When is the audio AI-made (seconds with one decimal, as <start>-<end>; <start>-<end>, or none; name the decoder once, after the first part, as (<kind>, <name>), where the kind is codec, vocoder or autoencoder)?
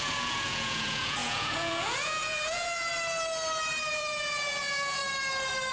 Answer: 0.0-2.9 (vocoder, Vocos); 3.9-5.0